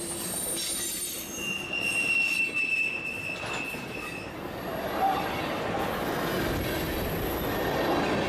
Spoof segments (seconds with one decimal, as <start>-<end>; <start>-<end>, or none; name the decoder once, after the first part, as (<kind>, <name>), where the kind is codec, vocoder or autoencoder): none